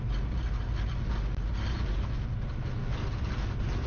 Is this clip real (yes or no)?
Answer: yes